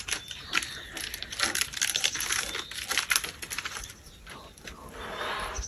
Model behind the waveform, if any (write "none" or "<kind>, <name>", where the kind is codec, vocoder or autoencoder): none